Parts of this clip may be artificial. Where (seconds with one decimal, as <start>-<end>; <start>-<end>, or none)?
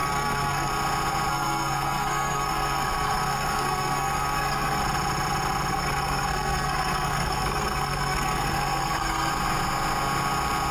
0.0-0.7; 1.3-4.8; 5.7-9.3